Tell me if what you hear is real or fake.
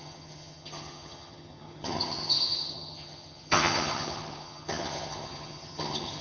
fake